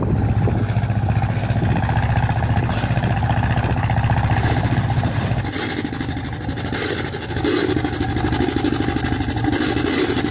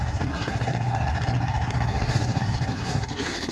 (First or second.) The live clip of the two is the first